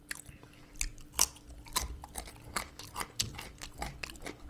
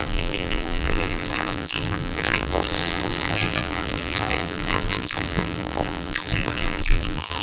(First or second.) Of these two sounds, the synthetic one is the second